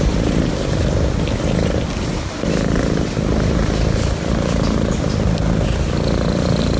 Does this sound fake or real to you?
real